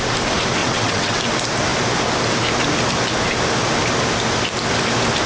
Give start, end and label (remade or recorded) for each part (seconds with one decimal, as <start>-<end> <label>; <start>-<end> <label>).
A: 0.0-0.6 recorded; 0.6-1.2 remade; 1.2-5.3 recorded